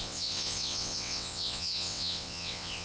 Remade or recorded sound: remade